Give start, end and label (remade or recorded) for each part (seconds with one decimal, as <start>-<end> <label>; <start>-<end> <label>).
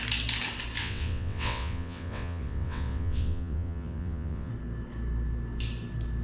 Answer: 0.0-0.8 recorded; 0.8-4.5 remade; 4.5-6.2 recorded